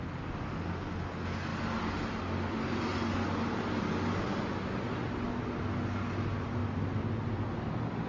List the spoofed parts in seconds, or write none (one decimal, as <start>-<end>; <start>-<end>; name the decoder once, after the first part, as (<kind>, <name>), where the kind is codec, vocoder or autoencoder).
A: none